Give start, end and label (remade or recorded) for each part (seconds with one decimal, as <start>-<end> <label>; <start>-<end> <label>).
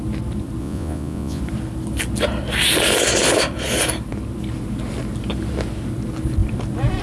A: 0.0-0.6 recorded; 0.6-1.4 remade; 1.4-7.0 recorded